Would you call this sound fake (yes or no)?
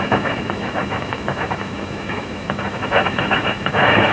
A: yes